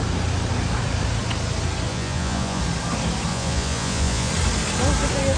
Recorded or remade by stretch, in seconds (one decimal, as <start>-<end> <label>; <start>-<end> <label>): 0.0-1.9 recorded; 1.9-2.6 remade; 2.6-3.3 recorded; 3.3-4.3 remade; 4.3-5.4 recorded